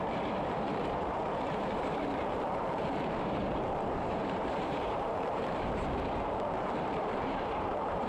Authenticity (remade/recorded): remade